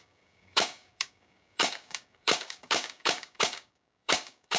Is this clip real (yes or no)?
no